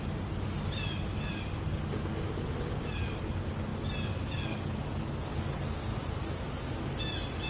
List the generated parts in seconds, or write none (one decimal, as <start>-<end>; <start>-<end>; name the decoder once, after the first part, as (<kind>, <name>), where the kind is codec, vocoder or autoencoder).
none